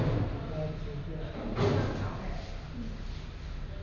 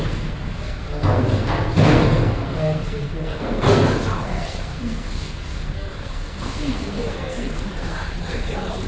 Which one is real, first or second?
first